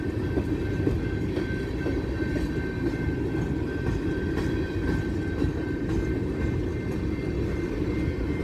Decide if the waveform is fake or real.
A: real